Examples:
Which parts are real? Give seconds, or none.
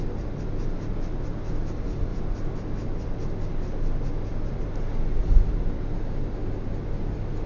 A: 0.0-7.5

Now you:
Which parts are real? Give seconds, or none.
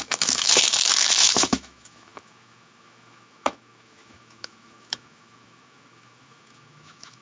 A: none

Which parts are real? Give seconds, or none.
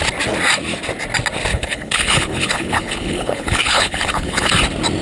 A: 0.0-1.5; 4.5-5.0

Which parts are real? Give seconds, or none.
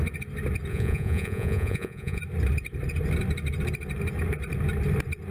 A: 0.0-0.7; 2.2-5.3